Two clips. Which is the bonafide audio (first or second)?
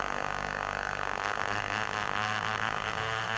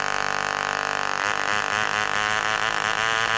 second